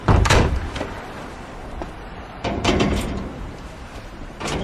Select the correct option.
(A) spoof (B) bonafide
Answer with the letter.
A